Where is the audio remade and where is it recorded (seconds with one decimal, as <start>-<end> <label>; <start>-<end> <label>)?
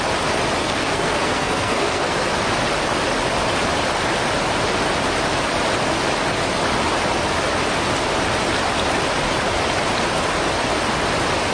0.0-0.6 recorded; 0.6-2.3 remade; 2.3-11.5 recorded